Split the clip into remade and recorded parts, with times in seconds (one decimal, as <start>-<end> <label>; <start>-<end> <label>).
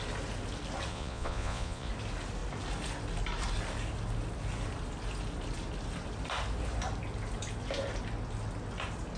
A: 0.0-0.9 recorded; 0.9-1.9 remade; 1.9-9.2 recorded